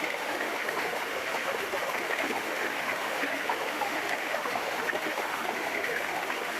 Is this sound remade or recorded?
remade